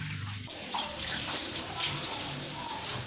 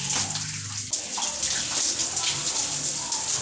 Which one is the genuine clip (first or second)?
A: second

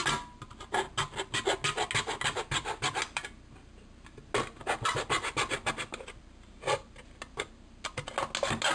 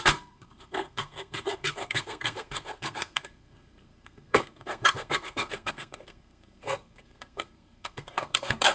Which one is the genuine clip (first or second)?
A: first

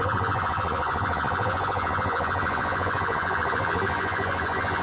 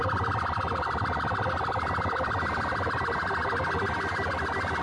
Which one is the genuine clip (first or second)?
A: second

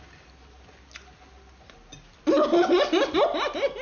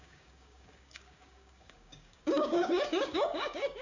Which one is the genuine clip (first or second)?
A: first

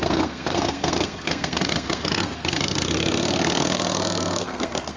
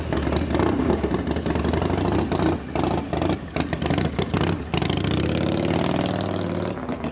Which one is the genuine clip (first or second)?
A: second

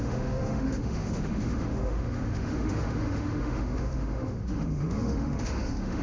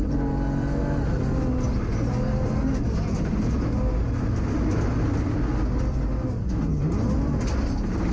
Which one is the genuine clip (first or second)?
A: second